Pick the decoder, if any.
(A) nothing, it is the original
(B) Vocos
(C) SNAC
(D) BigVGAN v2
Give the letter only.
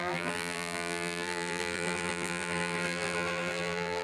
D